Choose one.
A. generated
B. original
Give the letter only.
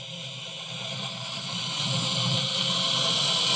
B